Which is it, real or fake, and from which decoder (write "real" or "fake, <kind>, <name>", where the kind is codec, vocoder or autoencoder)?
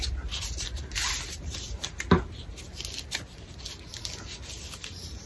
real